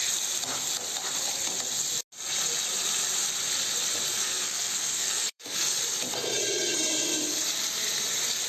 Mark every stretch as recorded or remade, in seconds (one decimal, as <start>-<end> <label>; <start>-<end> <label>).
0.0-4.1 recorded; 4.1-5.8 remade; 5.8-8.5 recorded